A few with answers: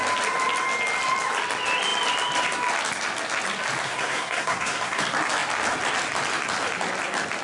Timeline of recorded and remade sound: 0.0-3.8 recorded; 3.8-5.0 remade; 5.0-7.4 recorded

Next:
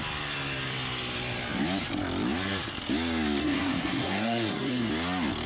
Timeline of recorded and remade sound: 0.0-3.4 recorded; 3.4-4.9 remade; 4.9-5.5 recorded

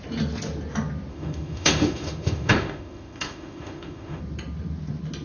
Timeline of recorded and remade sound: 0.0-1.1 recorded; 1.1-4.2 remade; 4.2-5.2 recorded

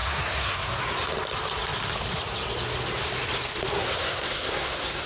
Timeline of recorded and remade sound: 0.0-0.8 remade; 0.8-3.7 recorded; 3.7-5.1 remade

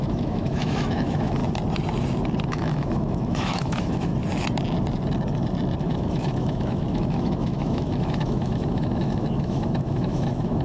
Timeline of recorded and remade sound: 0.0-1.4 remade; 1.4-2.5 recorded; 2.5-4.1 remade; 4.1-5.8 recorded; 5.8-10.6 remade

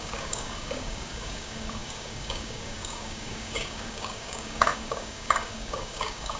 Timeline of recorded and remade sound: 0.0-6.4 remade

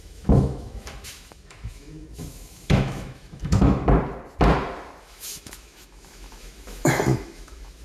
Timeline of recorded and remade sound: 0.0-3.8 remade; 3.8-5.0 recorded; 5.0-7.8 remade

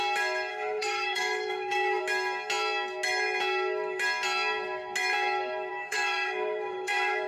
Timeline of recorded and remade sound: 0.0-0.5 recorded; 0.5-2.0 remade; 2.0-5.7 recorded; 5.7-7.3 remade